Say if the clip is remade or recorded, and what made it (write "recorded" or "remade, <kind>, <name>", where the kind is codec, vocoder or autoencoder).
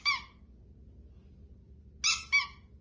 recorded